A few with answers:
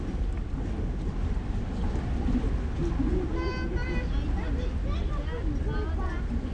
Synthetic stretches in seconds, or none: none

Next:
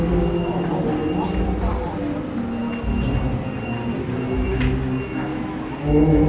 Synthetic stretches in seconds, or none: 5.3-6.3 (autoencoder, DAC-VAE)

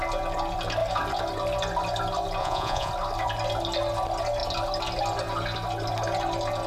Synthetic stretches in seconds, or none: 2.4-2.9 (vocoder, Vocos)

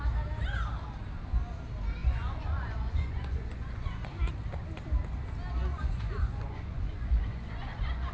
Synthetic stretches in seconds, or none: 2.0-4.0 (vocoder, Vocos); 5.7-8.1